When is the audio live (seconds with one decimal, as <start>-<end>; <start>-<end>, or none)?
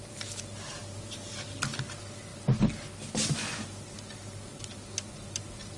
0.0-5.8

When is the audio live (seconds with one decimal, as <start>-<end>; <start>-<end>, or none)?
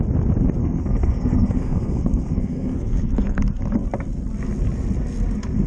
0.0-0.6; 3.4-5.7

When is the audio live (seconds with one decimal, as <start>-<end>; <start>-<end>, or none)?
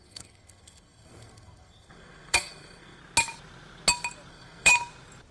3.0-4.3; 4.7-5.3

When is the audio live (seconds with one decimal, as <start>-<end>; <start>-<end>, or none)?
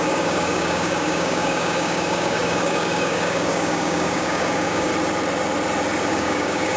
4.9-6.1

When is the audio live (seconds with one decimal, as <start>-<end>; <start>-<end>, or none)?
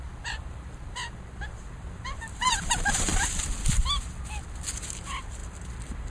3.1-5.0; 5.4-6.1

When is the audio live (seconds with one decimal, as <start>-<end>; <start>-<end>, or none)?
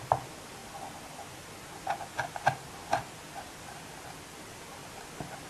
0.0-5.5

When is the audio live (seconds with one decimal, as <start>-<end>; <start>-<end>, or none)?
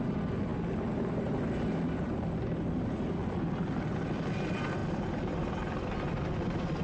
0.0-6.8